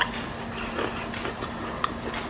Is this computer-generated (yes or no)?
no